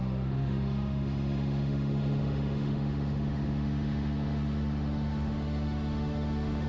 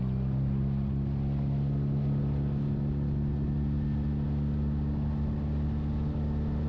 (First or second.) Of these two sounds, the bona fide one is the second